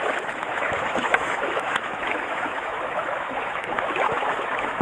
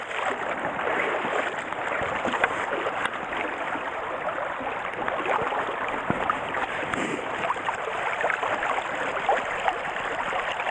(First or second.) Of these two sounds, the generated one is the first